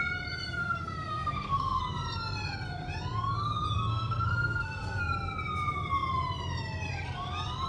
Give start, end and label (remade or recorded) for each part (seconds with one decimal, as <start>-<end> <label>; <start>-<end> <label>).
0.0-0.6 recorded; 0.6-1.8 remade; 1.8-3.9 recorded; 3.9-5.0 remade; 5.0-7.7 recorded